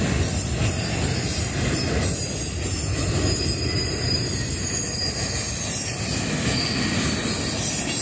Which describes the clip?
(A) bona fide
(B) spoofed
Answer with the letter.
A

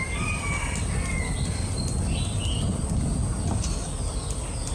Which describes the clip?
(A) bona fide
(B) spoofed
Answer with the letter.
A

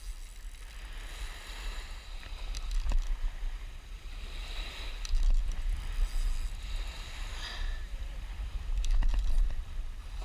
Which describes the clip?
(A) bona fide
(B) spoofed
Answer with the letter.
A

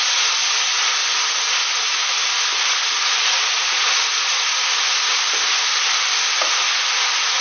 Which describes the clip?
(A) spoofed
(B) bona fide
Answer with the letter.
B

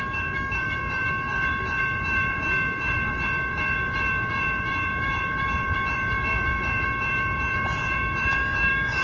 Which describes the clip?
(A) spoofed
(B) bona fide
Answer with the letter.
A